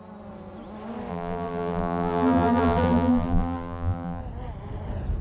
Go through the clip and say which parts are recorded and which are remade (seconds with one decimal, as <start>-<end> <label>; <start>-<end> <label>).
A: 0.0-1.1 recorded; 1.1-4.2 remade; 4.2-5.2 recorded